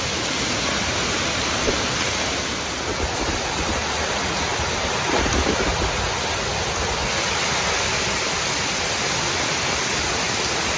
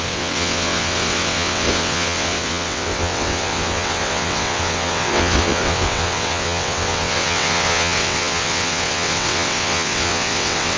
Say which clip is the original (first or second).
first